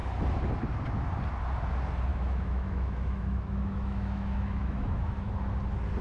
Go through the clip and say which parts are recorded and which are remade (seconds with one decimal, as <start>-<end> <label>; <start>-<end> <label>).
0.0-2.1 recorded; 2.1-5.3 remade; 5.3-6.0 recorded